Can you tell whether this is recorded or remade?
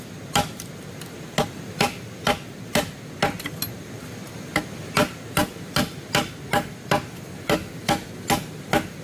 recorded